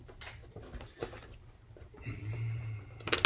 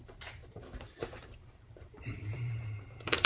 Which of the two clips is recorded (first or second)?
first